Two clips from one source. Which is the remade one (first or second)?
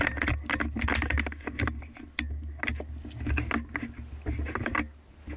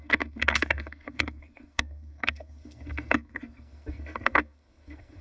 second